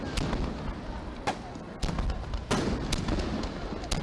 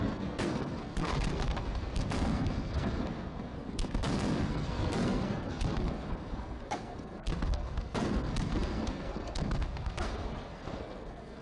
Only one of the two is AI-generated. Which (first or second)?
second